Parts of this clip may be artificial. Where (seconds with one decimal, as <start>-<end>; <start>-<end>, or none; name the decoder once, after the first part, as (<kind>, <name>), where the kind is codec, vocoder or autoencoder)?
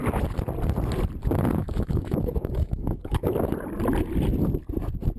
1.6-3.3 (autoencoder, DAC-VAE)